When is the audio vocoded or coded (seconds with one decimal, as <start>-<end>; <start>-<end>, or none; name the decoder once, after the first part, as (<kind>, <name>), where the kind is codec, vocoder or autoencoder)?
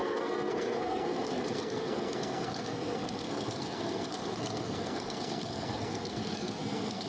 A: 0.0-7.1 (codec, SNAC)